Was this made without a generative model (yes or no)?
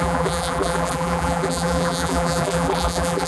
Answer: no